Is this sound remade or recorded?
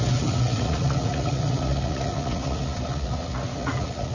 remade